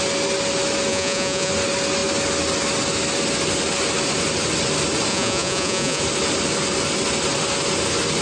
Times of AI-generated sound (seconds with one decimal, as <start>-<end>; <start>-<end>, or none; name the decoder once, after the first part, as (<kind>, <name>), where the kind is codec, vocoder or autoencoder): 0.9-1.5 (vocoder, Vocos); 5.1-6.0